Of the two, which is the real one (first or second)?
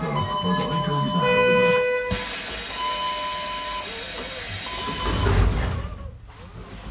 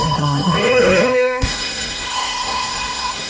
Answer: first